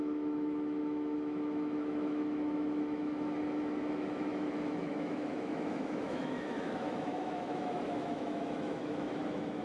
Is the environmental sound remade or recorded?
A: remade